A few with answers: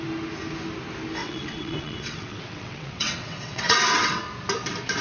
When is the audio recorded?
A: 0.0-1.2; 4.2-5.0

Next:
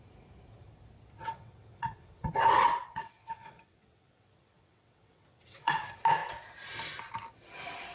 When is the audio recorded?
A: 0.0-1.2; 2.3-2.8; 5.8-7.9

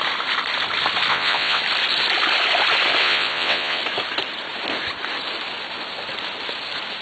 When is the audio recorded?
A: 0.0-1.1; 1.6-3.0; 3.8-7.0

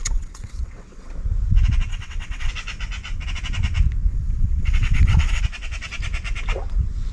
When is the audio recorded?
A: 1.1-1.9; 2.5-4.1; 5.4-7.1

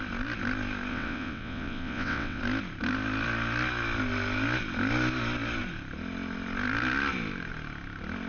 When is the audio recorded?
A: 0.0-0.9; 2.4-8.3

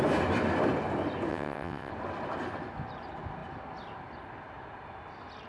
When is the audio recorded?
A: 0.0-1.3; 1.9-5.5

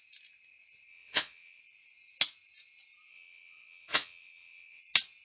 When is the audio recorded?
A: 0.0-0.9; 1.6-3.1; 4.8-5.2